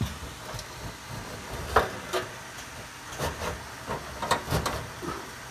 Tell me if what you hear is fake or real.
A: real